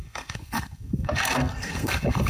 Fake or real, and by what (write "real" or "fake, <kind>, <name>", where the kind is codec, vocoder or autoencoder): fake, codec, SNAC